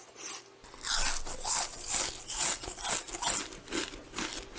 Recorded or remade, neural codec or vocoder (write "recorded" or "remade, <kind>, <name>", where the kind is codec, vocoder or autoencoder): recorded